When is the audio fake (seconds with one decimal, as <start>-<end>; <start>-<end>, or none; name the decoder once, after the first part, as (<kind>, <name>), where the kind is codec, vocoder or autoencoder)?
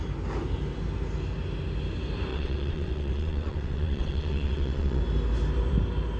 2.3-5.0 (vocoder, WaveNeXt)